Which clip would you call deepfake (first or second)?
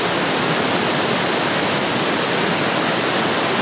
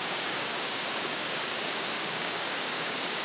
second